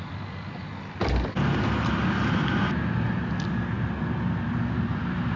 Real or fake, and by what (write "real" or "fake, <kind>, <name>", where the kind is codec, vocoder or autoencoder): real